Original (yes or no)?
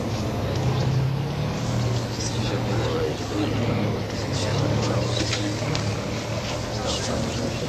yes